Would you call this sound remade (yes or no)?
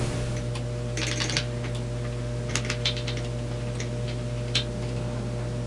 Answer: no